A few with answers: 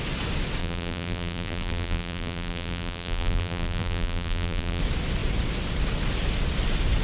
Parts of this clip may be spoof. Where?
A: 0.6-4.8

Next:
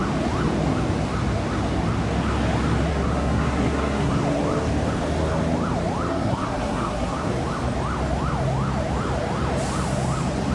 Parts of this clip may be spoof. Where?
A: 2.9-4.1; 6.1-7.3

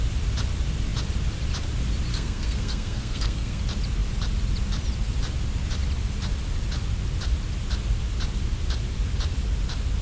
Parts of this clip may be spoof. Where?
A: 2.1-3.6

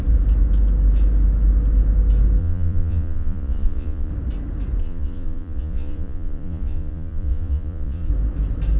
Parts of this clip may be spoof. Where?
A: 2.4-4.1; 4.8-8.1

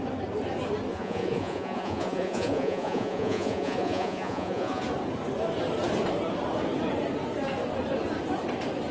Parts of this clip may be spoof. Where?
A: 0.9-4.8

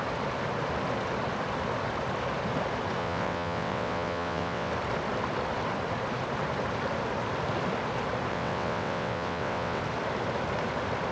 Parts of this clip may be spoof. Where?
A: 3.0-4.7; 8.3-9.8